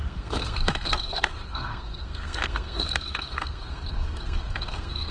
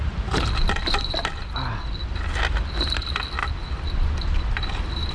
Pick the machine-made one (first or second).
first